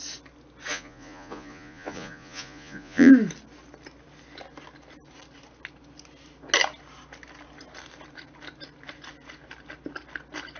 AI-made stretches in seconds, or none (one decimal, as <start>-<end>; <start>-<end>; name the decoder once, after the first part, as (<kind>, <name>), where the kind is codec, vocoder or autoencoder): 0.7-3.1 (vocoder, Vocos)